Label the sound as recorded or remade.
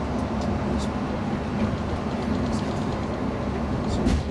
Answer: recorded